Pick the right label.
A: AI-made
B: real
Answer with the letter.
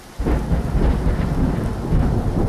B